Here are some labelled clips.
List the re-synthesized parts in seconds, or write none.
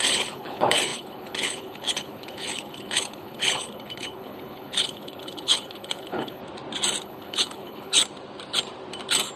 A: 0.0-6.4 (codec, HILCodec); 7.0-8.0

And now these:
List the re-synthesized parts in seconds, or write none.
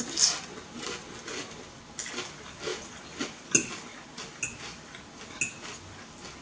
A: none